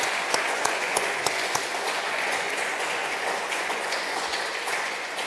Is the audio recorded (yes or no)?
no